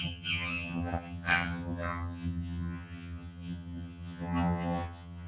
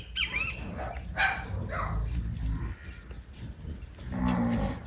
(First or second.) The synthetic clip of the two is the first